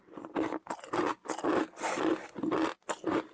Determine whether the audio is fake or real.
real